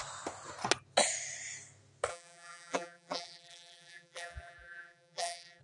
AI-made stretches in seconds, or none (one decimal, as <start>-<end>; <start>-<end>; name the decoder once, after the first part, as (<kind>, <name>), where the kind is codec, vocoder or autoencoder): 2.1-5.6 (vocoder, BigVGAN v2)